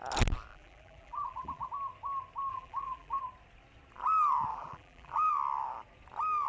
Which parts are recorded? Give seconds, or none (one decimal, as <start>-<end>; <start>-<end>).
0.0-0.5; 1.7-2.5; 3.2-4.5; 5.3-6.5